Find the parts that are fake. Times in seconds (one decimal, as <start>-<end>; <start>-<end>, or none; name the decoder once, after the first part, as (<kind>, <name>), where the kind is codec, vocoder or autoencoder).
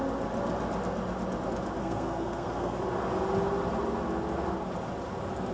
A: 1.8-2.8 (codec, SNAC)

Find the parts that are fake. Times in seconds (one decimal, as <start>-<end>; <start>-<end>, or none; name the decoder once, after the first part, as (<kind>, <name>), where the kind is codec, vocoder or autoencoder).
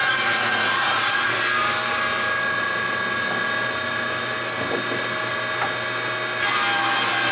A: 0.0-1.4 (vocoder, Vocos)